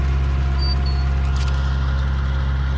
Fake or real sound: real